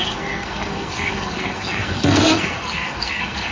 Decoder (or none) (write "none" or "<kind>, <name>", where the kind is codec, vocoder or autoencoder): codec, SNAC